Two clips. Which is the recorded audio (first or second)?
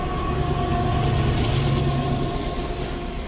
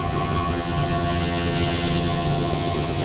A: first